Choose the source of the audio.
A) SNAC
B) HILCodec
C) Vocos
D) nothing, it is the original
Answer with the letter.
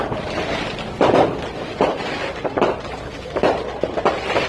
D